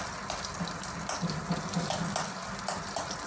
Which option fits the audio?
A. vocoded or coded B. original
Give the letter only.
B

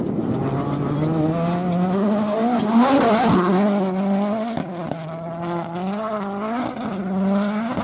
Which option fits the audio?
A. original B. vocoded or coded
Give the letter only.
A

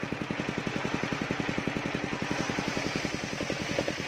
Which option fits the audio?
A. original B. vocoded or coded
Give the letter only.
A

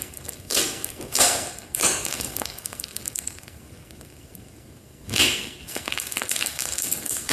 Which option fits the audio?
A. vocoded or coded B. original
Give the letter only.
A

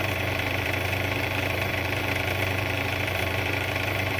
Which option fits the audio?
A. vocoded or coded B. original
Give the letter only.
A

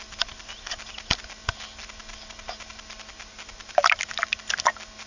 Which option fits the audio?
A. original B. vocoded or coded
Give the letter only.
A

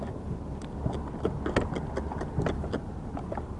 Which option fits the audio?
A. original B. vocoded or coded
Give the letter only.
A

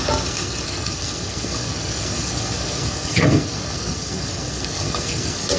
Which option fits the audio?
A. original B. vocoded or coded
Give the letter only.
B